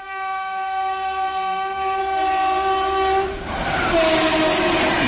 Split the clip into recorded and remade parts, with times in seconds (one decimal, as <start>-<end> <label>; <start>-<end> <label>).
0.0-2.0 remade; 2.0-5.1 recorded